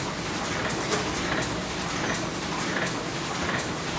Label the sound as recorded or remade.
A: recorded